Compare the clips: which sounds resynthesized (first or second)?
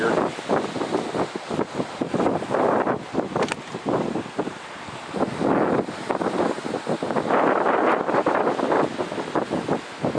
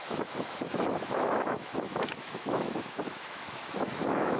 second